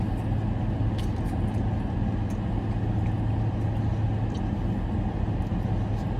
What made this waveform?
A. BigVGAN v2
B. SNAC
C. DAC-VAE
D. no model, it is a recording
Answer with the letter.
D